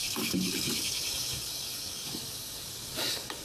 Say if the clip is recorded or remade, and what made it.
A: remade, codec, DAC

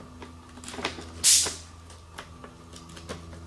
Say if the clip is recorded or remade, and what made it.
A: recorded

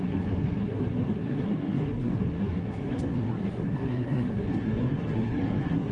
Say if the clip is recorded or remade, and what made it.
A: remade, codec, SNAC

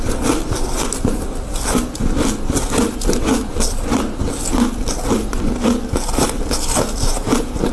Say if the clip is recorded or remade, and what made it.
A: recorded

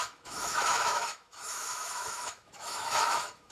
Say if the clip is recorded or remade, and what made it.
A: remade, autoencoder, DAC-VAE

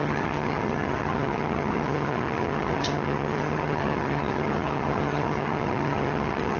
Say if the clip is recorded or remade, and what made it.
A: remade, vocoder, HiFi-GAN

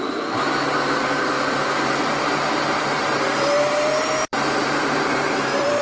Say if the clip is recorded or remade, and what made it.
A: remade, vocoder, BigVGAN v2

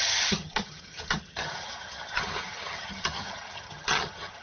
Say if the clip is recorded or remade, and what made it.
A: remade, vocoder, HiFi-GAN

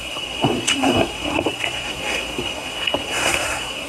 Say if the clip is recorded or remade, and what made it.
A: remade, codec, SNAC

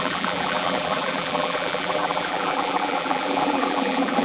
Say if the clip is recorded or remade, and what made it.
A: remade, vocoder, BigVGAN v2